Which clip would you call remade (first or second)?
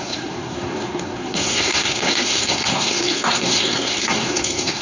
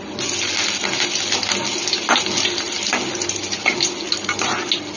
first